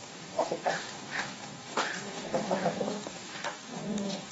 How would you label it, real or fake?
fake